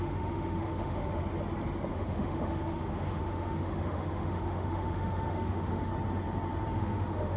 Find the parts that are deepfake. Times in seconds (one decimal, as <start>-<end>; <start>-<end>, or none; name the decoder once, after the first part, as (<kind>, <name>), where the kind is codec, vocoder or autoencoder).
0.0-1.2 (autoencoder, DAC-VAE); 1.9-5.9; 6.7-7.4